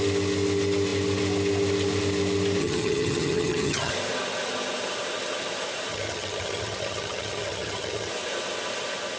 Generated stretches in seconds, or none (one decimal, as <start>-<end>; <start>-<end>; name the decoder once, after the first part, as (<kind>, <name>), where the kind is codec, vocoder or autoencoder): 2.6-3.9 (vocoder, HiFi-GAN); 5.9-8.1